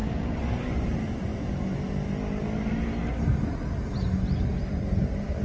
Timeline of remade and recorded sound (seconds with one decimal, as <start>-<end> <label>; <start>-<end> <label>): 0.0-0.6 remade; 0.6-1.3 recorded; 1.3-1.8 remade; 1.8-4.5 recorded; 4.5-5.4 remade